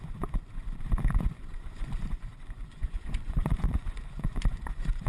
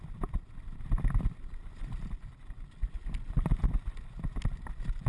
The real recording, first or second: second